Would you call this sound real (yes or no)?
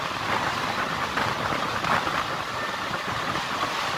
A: yes